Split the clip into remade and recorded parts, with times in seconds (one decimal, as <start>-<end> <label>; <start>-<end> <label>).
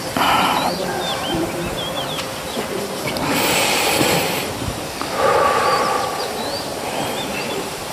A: 0.0-4.4 remade; 4.4-5.7 recorded; 5.7-7.9 remade